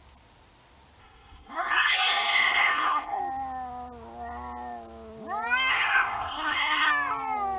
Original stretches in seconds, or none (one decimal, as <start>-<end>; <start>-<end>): 0.0-1.0; 3.2-5.7; 6.9-7.6